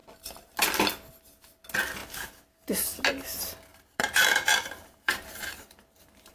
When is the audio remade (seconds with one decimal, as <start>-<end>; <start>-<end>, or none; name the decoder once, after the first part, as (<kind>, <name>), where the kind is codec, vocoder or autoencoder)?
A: 3.7-6.3 (vocoder, BigVGAN v2)